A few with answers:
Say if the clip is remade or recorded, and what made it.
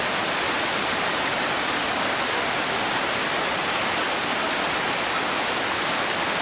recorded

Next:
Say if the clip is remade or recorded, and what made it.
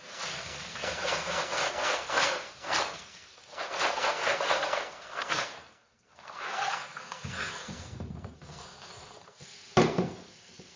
remade, codec, SNAC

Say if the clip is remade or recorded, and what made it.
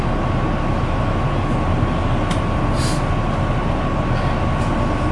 recorded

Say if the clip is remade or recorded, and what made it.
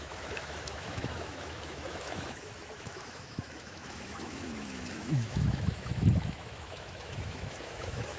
remade, autoencoder, DAC-VAE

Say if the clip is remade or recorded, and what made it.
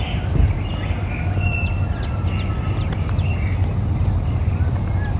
recorded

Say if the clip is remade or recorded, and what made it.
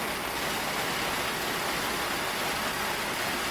recorded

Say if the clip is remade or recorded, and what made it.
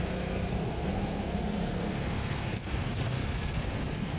remade, codec, SNAC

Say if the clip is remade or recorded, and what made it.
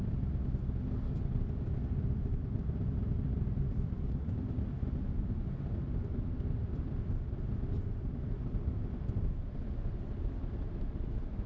remade, vocoder, BigVGAN v2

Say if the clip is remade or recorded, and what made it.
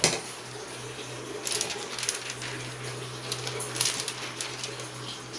recorded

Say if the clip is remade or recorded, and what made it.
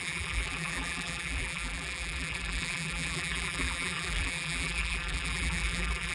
remade, vocoder, BigVGAN v2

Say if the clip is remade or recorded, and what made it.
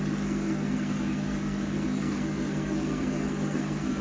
remade, codec, SNAC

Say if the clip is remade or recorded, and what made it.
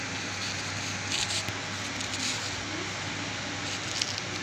recorded